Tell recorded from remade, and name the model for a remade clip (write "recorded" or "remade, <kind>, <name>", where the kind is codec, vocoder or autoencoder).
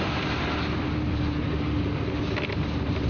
recorded